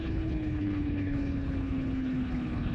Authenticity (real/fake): fake